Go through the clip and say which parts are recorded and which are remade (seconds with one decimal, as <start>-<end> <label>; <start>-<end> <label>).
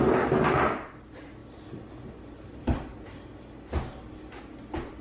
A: 0.0-5.0 recorded